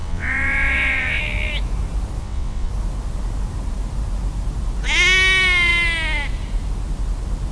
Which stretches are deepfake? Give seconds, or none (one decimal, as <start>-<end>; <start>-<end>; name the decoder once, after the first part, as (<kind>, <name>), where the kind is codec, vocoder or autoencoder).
0.0-1.2 (vocoder, WaveNeXt); 2.2-2.7